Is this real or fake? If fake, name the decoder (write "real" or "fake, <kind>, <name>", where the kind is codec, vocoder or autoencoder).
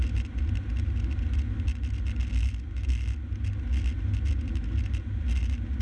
real